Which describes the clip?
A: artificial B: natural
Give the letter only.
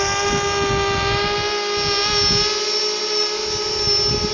B